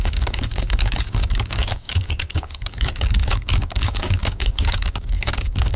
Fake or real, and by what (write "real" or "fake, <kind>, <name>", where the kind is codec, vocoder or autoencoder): fake, codec, DAC